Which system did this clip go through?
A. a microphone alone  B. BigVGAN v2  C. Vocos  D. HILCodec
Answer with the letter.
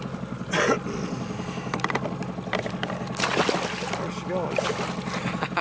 A